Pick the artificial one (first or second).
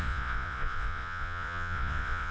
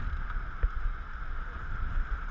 first